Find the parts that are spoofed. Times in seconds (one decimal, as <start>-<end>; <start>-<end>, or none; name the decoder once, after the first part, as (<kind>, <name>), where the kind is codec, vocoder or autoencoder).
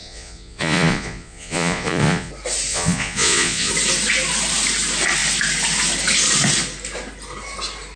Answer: 0.0-2.3 (vocoder, Vocos); 2.7-3.7